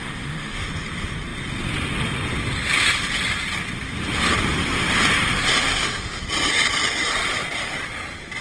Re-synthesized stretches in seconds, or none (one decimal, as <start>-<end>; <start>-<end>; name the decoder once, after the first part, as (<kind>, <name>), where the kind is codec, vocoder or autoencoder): 0.0-0.7 (autoencoder, DAC-VAE); 5.5-6.2